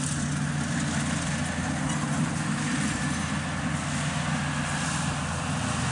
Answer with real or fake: real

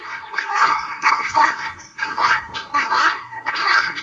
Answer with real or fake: fake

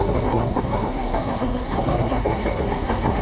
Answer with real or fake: fake